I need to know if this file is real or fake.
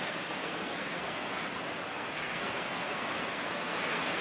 fake